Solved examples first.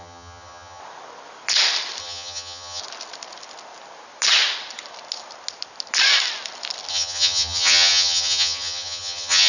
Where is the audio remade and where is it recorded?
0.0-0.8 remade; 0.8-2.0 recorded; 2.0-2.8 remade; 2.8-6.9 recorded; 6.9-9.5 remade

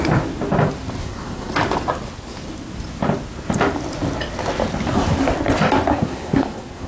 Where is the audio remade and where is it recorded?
0.0-1.0 recorded; 1.0-1.5 remade; 1.5-5.9 recorded; 5.9-6.9 remade

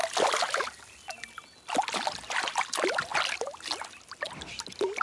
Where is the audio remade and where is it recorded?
0.0-5.0 recorded